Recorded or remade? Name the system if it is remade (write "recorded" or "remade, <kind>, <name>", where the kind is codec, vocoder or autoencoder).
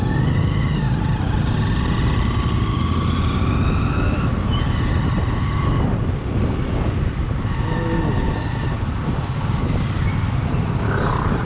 recorded